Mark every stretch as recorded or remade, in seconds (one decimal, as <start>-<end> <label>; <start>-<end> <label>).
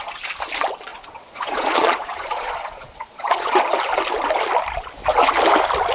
0.0-0.9 recorded; 0.9-3.6 remade; 3.6-5.9 recorded